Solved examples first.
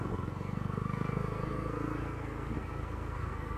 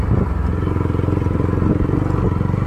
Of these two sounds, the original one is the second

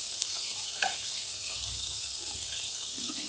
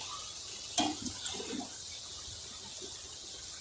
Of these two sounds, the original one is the second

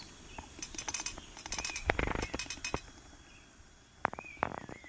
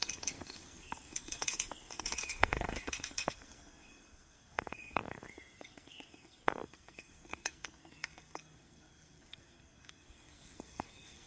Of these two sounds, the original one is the first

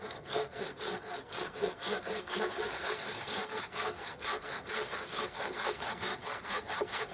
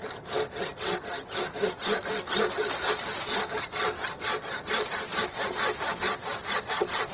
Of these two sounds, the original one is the second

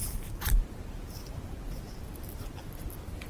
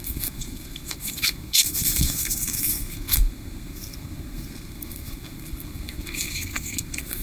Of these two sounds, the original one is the first